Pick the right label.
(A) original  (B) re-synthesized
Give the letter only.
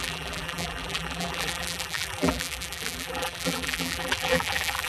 B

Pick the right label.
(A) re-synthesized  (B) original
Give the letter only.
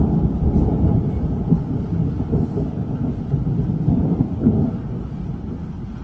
B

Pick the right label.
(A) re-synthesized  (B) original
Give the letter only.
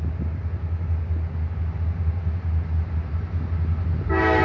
B